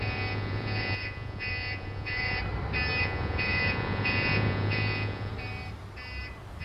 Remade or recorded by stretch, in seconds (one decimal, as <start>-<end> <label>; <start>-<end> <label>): 0.0-2.4 remade; 2.4-3.0 recorded; 3.0-5.3 remade; 5.3-6.6 recorded